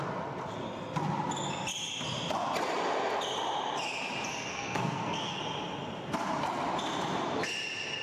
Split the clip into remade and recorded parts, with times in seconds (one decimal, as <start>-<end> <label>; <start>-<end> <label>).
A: 0.0-4.3 recorded; 4.3-5.4 remade; 5.4-8.0 recorded